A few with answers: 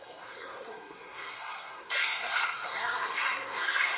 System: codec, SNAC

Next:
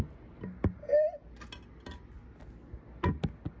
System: none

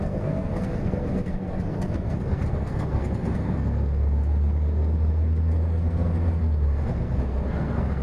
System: codec, SNAC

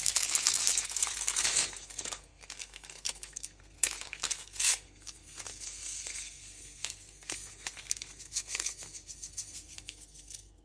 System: codec, SNAC